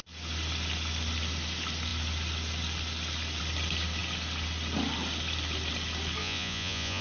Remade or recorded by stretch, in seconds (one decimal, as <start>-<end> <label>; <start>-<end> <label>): 0.0-6.2 recorded; 6.2-7.0 remade